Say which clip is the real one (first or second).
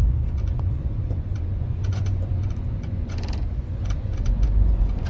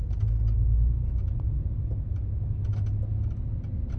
second